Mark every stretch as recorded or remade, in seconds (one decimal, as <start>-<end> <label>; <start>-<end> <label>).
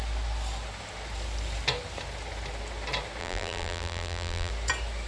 0.0-3.2 recorded; 3.2-4.5 remade; 4.5-5.1 recorded